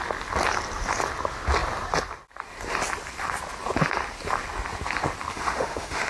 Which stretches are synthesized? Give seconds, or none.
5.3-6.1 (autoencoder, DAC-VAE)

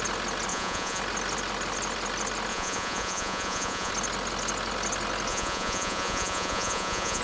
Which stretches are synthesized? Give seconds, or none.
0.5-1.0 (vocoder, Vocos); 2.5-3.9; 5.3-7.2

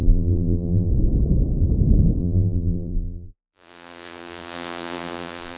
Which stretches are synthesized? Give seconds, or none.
0.0-0.9 (vocoder, BigVGAN v2); 2.2-5.6

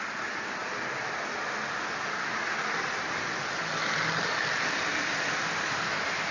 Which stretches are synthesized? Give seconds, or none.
0.0-6.3 (vocoder, BigVGAN v2)